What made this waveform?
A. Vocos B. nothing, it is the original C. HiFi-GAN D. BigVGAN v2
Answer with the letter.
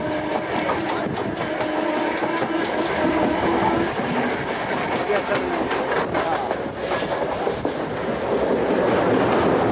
B